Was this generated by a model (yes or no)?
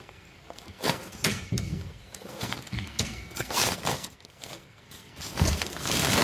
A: yes